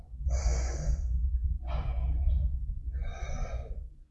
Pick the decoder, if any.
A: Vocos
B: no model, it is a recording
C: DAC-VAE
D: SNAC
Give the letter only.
A